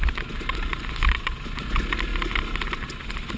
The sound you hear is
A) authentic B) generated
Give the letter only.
A